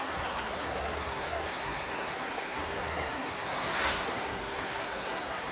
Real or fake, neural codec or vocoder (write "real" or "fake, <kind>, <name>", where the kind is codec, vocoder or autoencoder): fake, codec, SNAC